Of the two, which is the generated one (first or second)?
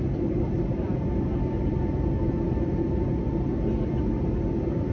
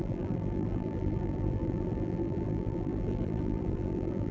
second